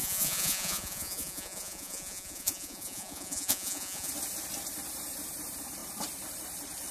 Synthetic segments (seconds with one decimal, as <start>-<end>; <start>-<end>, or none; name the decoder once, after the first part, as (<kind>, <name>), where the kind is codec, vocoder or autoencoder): 0.0-4.1 (vocoder, Vocos)